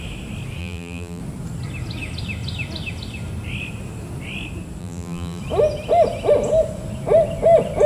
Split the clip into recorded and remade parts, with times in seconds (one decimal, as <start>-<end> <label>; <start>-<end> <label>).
0.0-0.6 recorded; 0.6-1.2 remade; 1.2-4.8 recorded; 4.8-5.4 remade; 5.4-7.9 recorded